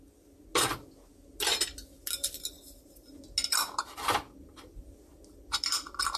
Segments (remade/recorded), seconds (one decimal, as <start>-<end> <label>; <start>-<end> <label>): 0.0-2.2 recorded; 2.2-3.2 remade; 3.2-6.2 recorded